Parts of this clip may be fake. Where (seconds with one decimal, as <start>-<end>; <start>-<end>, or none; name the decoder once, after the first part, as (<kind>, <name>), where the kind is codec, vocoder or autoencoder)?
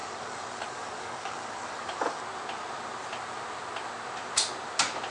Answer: 0.0-2.2 (codec, DAC)